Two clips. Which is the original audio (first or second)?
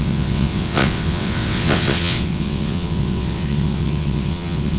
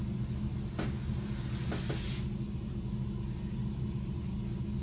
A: second